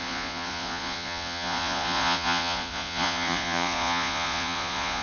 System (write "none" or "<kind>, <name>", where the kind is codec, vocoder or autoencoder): vocoder, Vocos